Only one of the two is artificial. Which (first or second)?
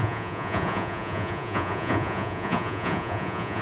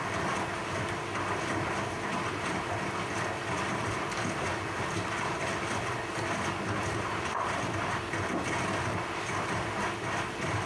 first